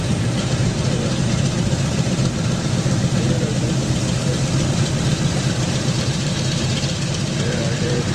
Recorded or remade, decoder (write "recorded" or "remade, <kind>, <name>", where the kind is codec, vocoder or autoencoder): remade, vocoder, BigVGAN v2